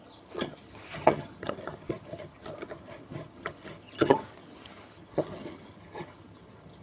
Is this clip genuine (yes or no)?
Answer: no